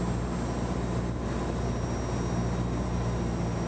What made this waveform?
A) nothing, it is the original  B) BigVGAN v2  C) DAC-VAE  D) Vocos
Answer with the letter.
A